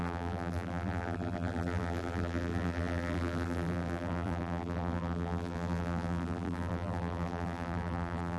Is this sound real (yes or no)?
no